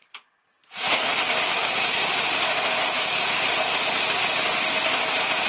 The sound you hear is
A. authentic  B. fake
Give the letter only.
A